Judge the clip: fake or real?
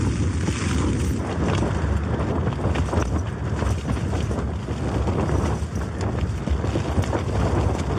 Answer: real